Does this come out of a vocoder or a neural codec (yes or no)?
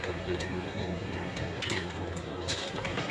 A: yes